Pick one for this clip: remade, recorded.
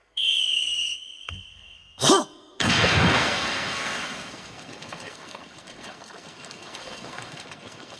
remade